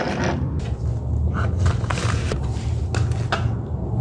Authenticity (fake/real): real